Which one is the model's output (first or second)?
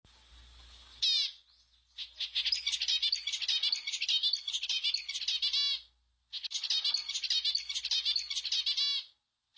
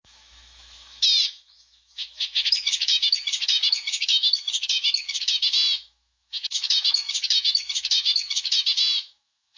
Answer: second